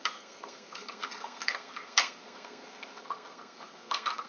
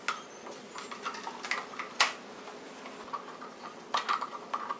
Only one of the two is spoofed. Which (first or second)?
first